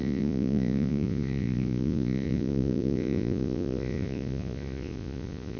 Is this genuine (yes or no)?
no